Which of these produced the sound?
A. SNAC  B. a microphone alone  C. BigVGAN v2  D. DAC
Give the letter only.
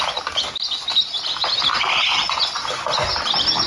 B